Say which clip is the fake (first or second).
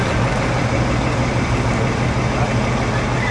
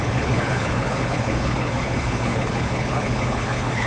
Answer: second